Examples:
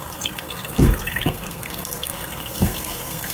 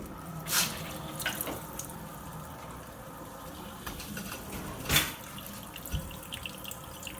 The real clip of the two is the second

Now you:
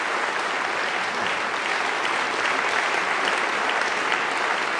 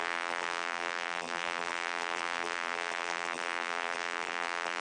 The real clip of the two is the first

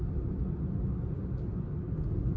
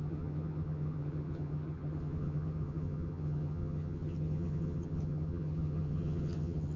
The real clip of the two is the first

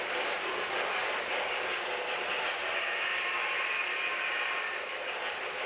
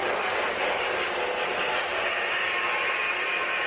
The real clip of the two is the second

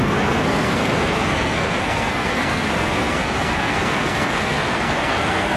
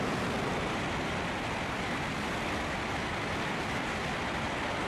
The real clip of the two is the second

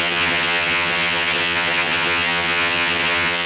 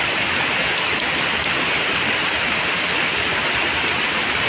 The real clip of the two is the second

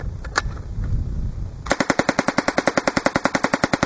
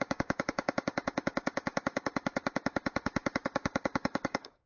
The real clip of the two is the first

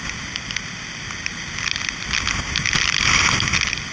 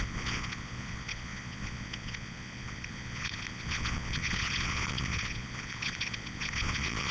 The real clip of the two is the first